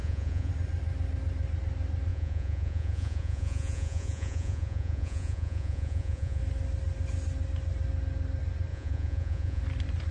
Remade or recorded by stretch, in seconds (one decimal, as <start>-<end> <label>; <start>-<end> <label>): 0.0-0.5 remade; 0.5-2.1 recorded; 2.1-6.4 remade; 6.4-8.7 recorded; 8.7-9.6 remade; 9.6-10.1 recorded